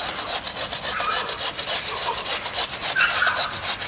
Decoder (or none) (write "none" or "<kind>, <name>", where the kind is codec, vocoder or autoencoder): none